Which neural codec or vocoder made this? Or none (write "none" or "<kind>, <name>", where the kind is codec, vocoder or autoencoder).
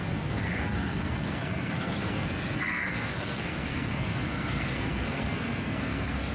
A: codec, SNAC